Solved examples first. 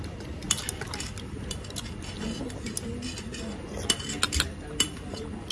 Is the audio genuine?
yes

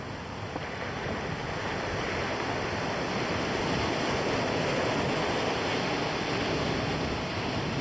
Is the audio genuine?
yes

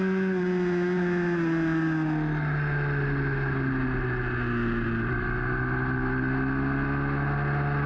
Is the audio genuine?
yes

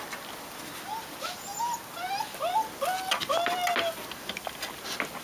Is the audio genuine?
yes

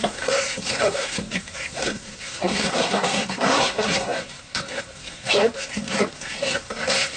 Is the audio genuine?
no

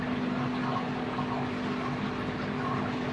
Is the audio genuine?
no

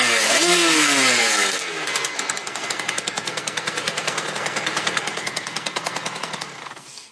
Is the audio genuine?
no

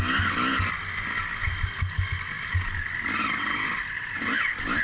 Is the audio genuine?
yes